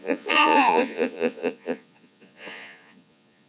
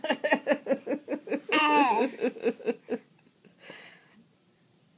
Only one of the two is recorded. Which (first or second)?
second